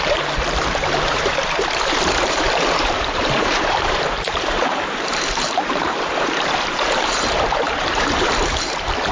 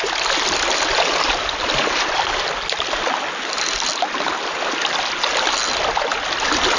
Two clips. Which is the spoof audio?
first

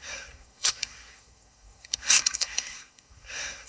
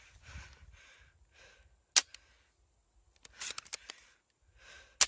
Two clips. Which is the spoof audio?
first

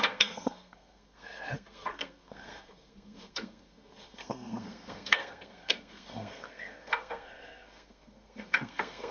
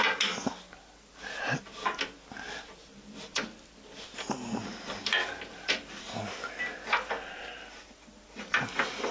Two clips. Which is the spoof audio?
first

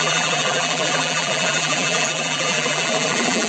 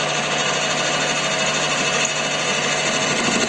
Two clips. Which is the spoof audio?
first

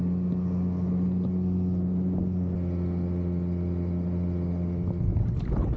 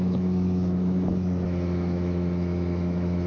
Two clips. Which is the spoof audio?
second